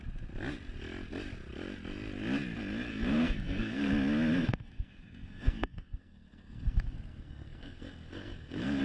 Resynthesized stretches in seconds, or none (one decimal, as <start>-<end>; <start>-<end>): 2.9-3.9; 4.3-8.8